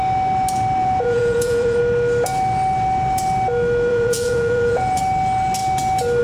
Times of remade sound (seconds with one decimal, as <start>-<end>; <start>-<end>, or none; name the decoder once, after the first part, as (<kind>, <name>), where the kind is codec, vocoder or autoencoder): 0.8-1.8 (vocoder, Vocos); 3.9-5.0